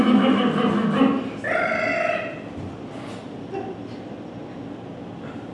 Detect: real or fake real